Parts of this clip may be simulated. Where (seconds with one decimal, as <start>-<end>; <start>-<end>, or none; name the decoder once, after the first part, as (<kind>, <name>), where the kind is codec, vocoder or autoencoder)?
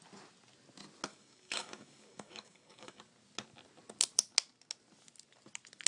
1.1-3.0 (codec, DAC)